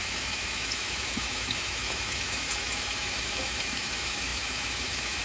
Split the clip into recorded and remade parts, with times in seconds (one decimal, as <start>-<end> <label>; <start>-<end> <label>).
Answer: 0.0-5.2 remade